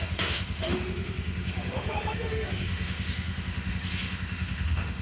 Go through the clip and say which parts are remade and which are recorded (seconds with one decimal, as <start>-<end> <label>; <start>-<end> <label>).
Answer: 0.0-5.0 remade